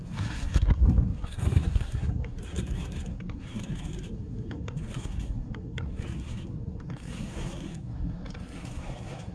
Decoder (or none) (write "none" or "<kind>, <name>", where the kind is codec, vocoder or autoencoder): codec, SNAC